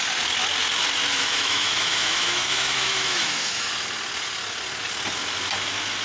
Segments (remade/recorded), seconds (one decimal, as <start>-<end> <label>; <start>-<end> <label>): 0.0-1.1 recorded; 1.1-3.7 remade; 3.7-6.0 recorded